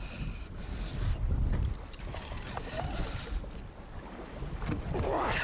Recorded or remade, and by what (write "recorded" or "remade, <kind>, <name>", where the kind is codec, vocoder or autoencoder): recorded